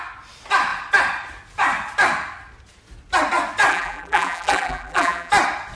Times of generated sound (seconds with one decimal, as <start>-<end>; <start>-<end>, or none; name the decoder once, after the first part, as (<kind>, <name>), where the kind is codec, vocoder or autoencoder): 3.7-5.3 (vocoder, BigVGAN v2)